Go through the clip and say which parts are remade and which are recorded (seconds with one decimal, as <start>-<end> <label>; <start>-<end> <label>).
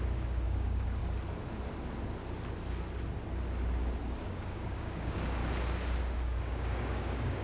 0.0-1.0 remade; 1.0-4.0 recorded; 4.0-5.4 remade; 5.4-6.0 recorded; 6.0-7.4 remade